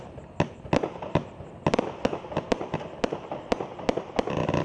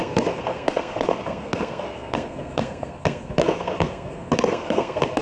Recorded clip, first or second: first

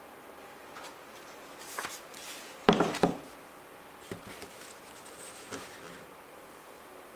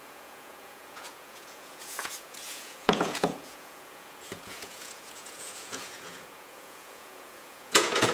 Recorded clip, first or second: first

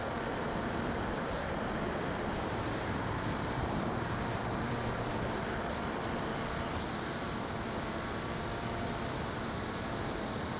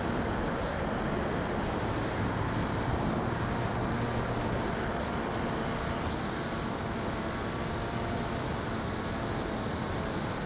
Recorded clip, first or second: second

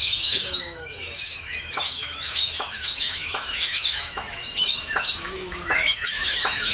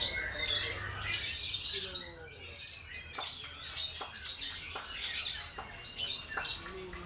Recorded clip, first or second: second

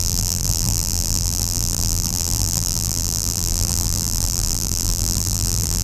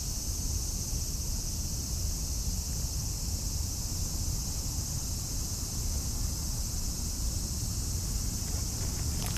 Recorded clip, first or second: second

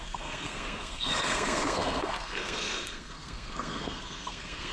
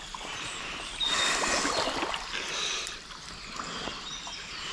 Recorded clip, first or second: second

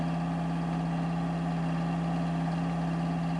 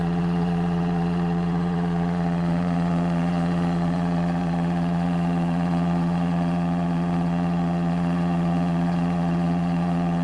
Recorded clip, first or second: first